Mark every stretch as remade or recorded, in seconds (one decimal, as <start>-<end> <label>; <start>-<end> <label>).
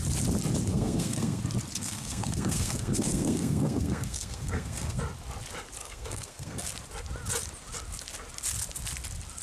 0.0-0.7 recorded; 0.7-1.4 remade; 1.4-1.8 recorded; 1.8-5.0 remade; 5.0-5.8 recorded; 5.8-6.7 remade; 6.7-9.4 recorded